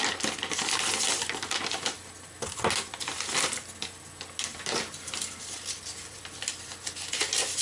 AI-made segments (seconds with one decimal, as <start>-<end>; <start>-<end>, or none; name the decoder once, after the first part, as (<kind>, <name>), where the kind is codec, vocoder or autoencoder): 4.5-6.5 (vocoder, BigVGAN v2)